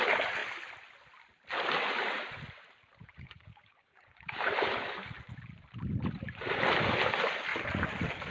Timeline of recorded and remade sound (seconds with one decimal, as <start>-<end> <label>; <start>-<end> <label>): 0.0-3.0 recorded; 3.0-4.5 remade; 4.5-8.3 recorded